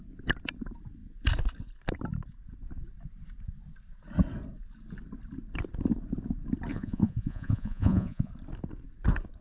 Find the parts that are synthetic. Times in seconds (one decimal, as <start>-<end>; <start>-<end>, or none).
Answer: 6.7-8.3